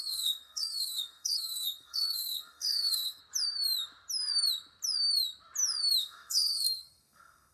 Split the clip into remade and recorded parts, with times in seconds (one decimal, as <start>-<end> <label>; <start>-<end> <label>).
0.0-3.2 remade; 3.2-6.0 recorded; 6.0-7.5 remade

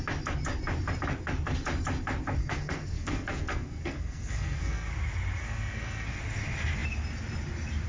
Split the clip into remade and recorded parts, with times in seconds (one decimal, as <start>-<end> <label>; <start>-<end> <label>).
0.0-2.4 recorded; 2.4-4.9 remade; 4.9-5.4 recorded; 5.4-6.2 remade; 6.2-7.9 recorded

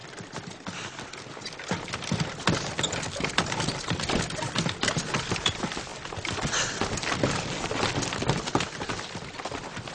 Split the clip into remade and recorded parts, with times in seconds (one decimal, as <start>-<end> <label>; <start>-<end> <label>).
0.0-9.9 recorded

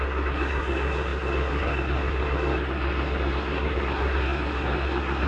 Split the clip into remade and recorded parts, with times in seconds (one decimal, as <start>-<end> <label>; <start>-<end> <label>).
0.0-5.3 remade

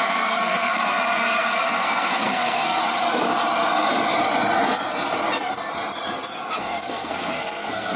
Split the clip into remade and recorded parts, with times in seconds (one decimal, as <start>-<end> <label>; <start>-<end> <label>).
0.0-2.8 remade; 2.8-6.6 recorded; 6.6-8.0 remade

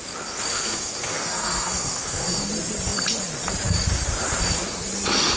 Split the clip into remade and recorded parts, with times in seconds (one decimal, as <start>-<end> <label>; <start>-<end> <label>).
0.0-0.5 recorded; 0.5-2.5 remade; 2.5-5.4 recorded